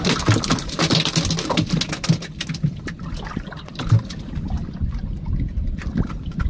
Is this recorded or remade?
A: recorded